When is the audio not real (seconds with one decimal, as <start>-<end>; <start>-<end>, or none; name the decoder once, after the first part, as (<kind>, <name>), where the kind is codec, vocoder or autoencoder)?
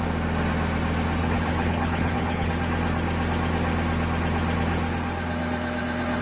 1.2-2.5 (codec, HILCodec)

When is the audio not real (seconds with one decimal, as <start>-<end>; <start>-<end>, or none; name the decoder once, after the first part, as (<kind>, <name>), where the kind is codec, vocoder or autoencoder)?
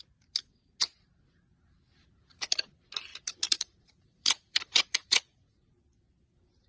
2.0-2.7 (vocoder, Vocos); 3.1-5.7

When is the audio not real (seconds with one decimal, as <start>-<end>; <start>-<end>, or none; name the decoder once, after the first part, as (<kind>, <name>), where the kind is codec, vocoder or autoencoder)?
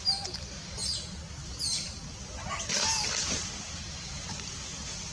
none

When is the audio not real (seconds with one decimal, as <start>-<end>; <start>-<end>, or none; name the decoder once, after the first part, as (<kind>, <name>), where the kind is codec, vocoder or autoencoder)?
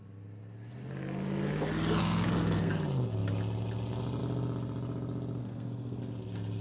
2.0-2.7 (codec, SNAC); 5.4-6.0